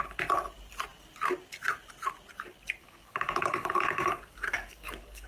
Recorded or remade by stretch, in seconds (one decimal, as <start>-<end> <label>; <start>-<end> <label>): 0.0-2.8 recorded; 2.8-5.3 remade